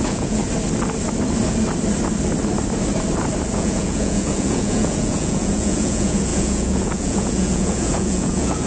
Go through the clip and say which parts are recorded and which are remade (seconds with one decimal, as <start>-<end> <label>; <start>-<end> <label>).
0.0-0.4 remade; 0.4-3.5 recorded; 3.5-8.7 remade